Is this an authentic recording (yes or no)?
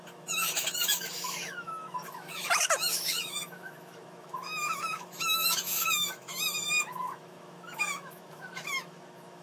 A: no